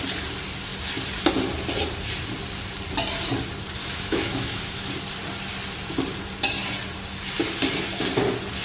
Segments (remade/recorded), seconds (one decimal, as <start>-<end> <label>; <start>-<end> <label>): 0.0-3.8 recorded; 3.8-4.9 remade; 4.9-8.6 recorded